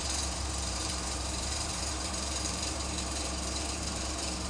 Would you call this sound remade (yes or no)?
yes